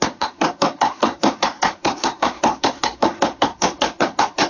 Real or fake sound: fake